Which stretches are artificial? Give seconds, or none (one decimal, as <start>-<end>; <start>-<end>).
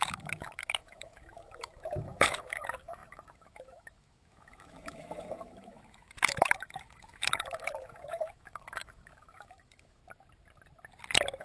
0.0-10.0